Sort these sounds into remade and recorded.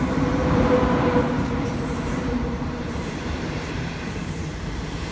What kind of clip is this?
remade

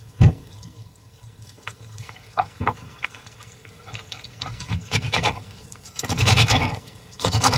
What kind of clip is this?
remade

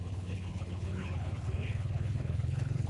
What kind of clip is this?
remade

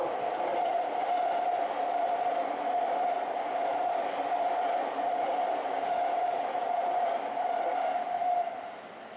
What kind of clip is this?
recorded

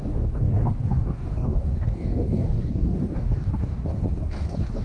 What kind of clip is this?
remade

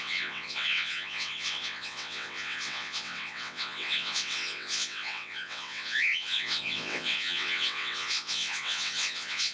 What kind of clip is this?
remade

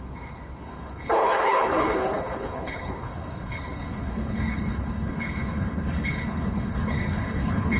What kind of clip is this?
remade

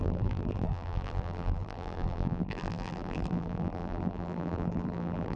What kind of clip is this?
remade